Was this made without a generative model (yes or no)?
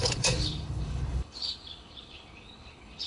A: no